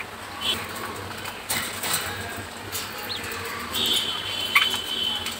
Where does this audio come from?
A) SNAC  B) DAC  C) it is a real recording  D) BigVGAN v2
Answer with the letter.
C